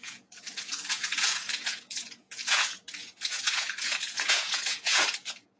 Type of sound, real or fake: fake